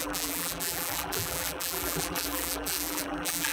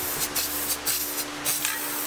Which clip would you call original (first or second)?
second